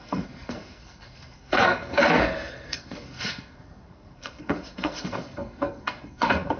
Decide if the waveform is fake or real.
fake